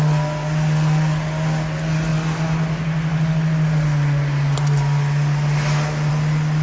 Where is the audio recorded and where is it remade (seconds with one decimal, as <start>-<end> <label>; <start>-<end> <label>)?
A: 0.0-6.6 recorded